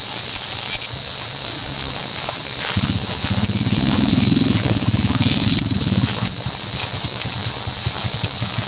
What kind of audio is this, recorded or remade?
remade